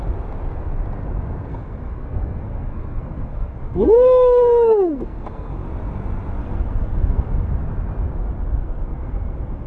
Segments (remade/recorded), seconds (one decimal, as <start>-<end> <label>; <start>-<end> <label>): 0.0-1.5 recorded; 1.5-5.7 remade; 5.7-6.4 recorded; 6.4-7.5 remade; 7.5-8.5 recorded; 8.5-9.7 remade